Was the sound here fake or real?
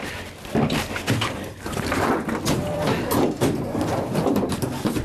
fake